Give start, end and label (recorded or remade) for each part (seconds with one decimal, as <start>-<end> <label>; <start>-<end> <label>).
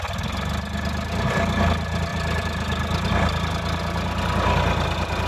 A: 0.0-2.1 recorded; 2.1-3.5 remade; 3.5-5.3 recorded